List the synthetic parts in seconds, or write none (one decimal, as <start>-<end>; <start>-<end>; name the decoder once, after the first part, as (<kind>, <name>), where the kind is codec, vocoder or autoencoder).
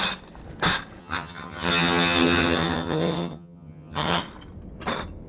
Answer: 1.0-4.2 (vocoder, HiFi-GAN)